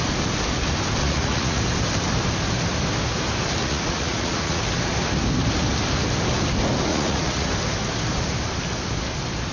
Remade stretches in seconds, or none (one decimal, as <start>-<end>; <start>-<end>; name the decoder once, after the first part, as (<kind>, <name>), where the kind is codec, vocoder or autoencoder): 1.0-1.6 (vocoder, Vocos); 3.6-4.6; 6.9-7.5

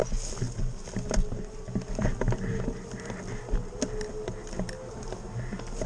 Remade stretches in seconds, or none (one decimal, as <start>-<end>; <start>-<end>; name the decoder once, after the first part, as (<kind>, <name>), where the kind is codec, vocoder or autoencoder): none